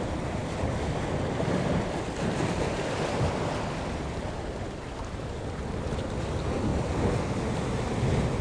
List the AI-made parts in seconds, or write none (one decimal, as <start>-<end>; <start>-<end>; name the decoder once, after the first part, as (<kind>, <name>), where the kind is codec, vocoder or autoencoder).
none